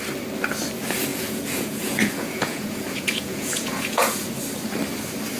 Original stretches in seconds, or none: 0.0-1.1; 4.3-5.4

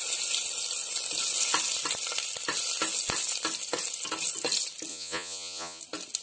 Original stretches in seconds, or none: 0.0-4.9; 5.8-6.2

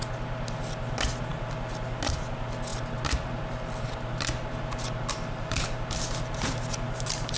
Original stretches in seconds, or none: 0.0-7.4